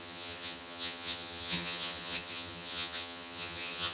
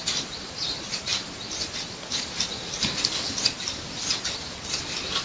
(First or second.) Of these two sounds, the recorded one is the second